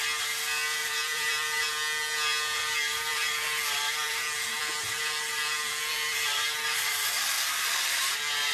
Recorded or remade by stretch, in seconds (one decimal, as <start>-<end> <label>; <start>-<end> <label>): 0.0-0.8 recorded; 0.8-1.7 remade; 1.7-2.6 recorded; 2.6-7.5 remade; 7.5-8.5 recorded